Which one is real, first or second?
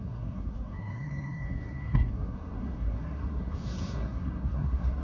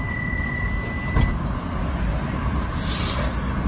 second